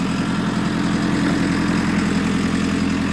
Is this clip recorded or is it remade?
recorded